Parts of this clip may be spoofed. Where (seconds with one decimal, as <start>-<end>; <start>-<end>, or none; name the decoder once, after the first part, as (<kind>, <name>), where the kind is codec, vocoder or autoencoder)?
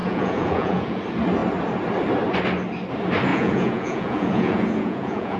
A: 0.0-1.0 (vocoder, Vocos); 3.3-5.4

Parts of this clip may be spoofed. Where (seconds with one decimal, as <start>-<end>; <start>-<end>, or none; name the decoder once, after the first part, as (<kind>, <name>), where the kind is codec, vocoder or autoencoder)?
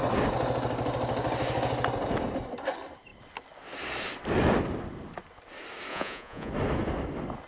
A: 5.9-6.5 (vocoder, Vocos)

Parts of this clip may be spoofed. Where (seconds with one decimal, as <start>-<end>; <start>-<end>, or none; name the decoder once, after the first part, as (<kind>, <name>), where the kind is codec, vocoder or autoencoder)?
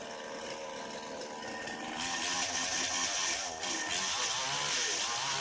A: none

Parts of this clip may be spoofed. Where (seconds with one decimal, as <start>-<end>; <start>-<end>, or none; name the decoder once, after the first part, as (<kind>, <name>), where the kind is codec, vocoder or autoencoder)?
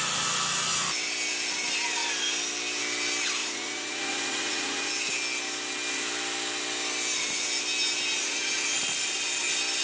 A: 3.4-4.9 (vocoder, Vocos); 8.2-9.1